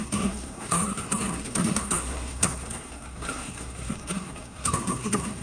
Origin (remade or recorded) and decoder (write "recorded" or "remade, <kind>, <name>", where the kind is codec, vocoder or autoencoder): remade, codec, SNAC